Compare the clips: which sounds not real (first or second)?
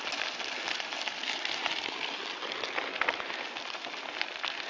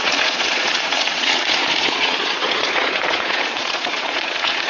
second